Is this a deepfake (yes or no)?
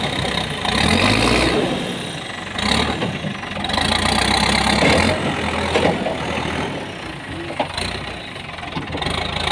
no